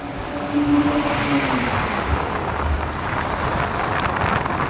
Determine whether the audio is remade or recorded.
recorded